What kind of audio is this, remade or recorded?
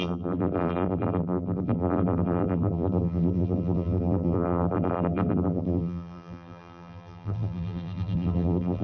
remade